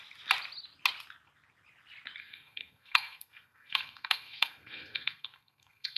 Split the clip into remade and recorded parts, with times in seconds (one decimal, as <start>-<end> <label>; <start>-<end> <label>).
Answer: 0.0-2.2 recorded; 2.2-6.0 remade